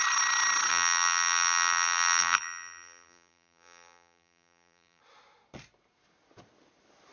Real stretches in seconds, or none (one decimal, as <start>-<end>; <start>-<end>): 0.0-0.7; 5.0-7.1